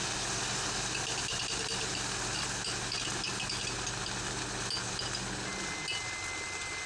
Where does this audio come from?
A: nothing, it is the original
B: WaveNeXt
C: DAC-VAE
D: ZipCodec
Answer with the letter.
A